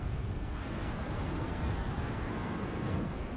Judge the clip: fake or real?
fake